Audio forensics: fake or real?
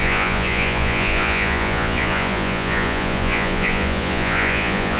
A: fake